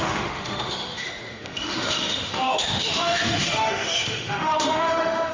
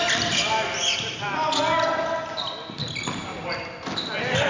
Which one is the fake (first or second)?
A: first